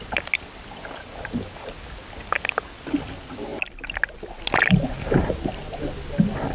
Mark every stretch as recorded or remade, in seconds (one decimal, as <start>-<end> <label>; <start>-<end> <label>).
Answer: 0.0-6.5 recorded